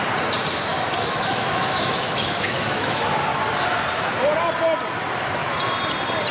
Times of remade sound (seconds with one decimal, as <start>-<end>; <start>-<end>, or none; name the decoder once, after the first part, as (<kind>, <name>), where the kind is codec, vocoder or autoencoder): 0.7-3.0 (autoencoder, DAC-VAE)